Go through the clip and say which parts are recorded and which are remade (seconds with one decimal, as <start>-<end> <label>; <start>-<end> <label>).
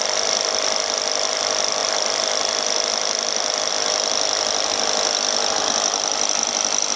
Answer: 0.0-7.0 recorded